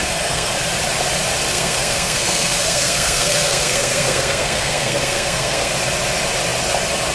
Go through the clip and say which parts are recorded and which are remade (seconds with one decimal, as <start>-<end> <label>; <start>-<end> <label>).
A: 0.0-0.5 remade; 0.5-1.5 recorded; 1.5-5.7 remade; 5.7-7.1 recorded